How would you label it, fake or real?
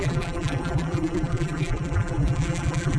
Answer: fake